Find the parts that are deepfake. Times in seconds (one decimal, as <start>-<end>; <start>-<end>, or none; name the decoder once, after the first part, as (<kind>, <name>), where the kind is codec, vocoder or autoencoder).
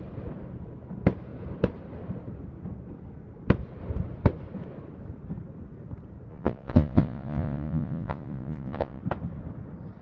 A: 6.3-9.0 (vocoder, Vocos)